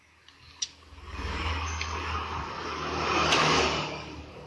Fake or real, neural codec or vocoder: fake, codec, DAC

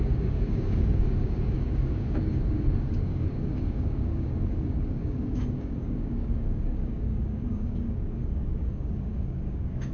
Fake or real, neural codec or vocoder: fake, codec, DAC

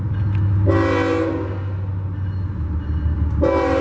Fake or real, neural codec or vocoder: real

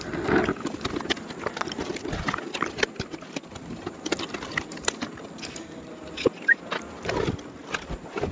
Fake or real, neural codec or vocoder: real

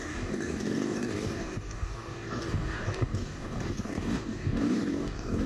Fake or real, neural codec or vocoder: fake, codec, DAC